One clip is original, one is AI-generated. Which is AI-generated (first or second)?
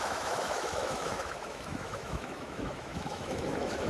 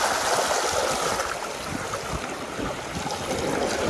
first